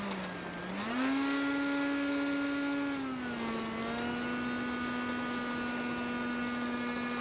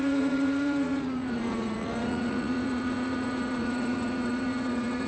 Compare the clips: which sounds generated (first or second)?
second